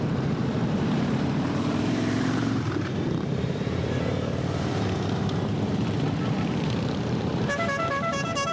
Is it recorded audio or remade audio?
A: remade